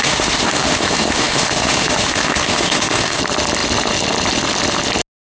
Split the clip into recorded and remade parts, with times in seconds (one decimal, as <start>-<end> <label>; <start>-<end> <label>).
0.0-3.2 remade; 3.2-5.3 recorded